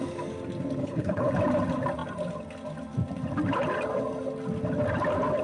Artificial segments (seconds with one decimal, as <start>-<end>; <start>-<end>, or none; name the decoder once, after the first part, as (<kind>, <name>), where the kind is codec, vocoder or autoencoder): 0.8-1.3 (codec, HILCodec)